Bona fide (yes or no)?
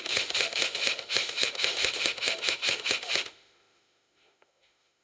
no